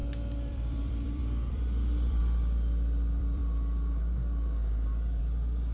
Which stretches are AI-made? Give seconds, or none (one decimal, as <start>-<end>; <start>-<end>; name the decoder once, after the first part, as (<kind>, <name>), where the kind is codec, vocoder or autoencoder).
0.5-3.4 (vocoder, BigVGAN v2); 5.2-5.7